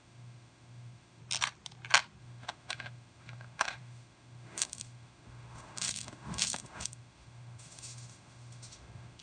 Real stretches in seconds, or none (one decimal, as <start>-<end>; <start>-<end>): 1.2-2.2